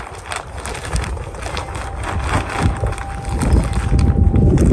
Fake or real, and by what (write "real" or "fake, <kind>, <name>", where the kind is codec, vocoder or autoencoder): real